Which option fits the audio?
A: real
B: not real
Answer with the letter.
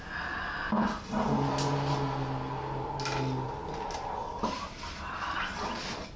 A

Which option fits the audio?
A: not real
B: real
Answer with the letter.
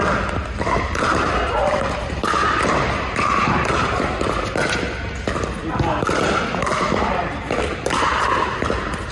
B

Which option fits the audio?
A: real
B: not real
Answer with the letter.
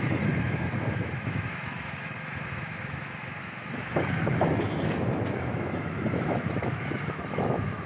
B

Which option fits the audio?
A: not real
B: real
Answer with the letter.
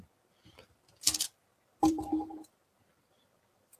A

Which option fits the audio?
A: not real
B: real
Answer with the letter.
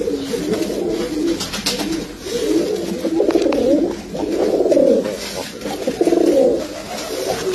B